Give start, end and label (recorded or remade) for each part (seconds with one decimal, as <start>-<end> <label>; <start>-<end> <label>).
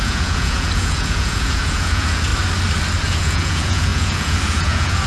0.0-2.3 remade; 2.3-3.0 recorded; 3.0-5.1 remade